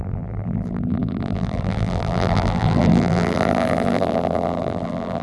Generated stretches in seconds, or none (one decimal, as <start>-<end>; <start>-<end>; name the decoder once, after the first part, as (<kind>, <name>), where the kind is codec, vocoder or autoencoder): 0.0-5.2 (vocoder, BigVGAN v2)